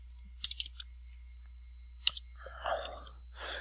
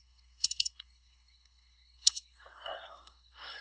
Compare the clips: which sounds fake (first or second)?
second